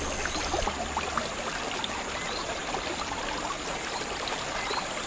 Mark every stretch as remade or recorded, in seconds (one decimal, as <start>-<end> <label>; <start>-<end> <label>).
0.0-5.1 recorded